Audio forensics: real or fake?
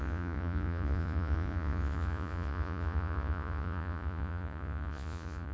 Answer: fake